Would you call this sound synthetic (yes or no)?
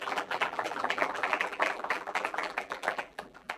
yes